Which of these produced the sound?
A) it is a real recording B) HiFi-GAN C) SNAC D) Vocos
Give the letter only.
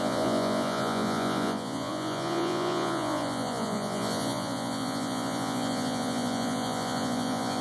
D